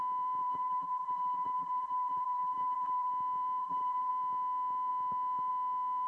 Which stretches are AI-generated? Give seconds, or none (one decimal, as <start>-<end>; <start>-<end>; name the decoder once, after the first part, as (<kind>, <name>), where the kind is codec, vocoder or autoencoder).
0.4-3.1 (vocoder, BigVGAN v2); 3.6-4.1